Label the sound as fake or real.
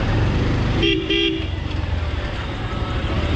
fake